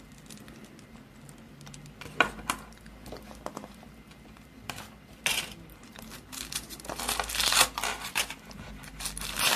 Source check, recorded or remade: recorded